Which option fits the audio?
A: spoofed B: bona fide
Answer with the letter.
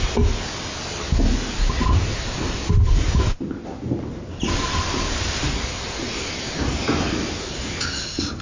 B